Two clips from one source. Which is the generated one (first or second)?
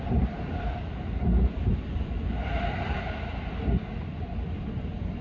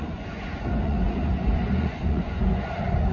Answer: second